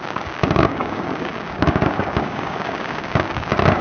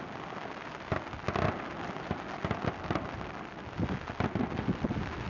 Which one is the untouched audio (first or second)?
second